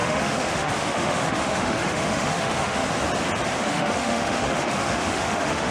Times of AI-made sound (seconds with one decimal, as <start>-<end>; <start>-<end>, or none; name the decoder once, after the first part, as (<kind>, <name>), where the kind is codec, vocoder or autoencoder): 0.0-2.8 (autoencoder, DAC-VAE); 3.6-5.7